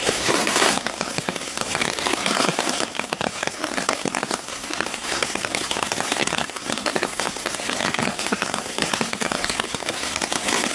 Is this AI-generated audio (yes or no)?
yes